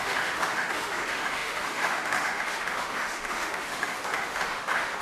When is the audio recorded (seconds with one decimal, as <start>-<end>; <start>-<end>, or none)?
none